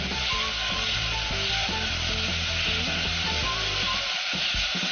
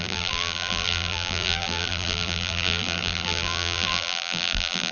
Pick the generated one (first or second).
second